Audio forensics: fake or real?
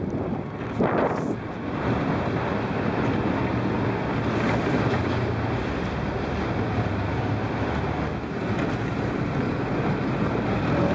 real